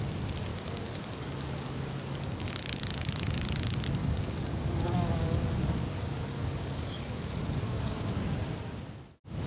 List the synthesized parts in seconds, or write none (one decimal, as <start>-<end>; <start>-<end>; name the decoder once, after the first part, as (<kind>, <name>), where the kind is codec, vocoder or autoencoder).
0.5-2.5 (codec, DAC); 4.0-8.2